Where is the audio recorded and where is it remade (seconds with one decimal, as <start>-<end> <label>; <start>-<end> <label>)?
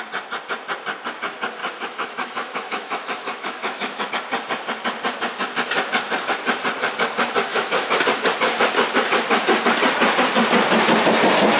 0.0-1.6 recorded; 1.6-4.1 remade; 4.1-7.5 recorded; 7.5-8.0 remade; 8.0-11.6 recorded